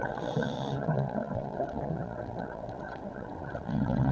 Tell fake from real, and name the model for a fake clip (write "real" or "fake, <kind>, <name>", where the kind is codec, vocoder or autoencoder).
fake, vocoder, WaveNeXt